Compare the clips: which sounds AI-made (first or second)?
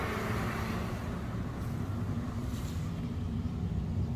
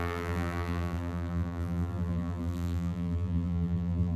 second